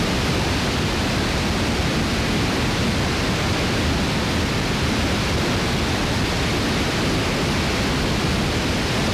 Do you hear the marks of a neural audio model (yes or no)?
no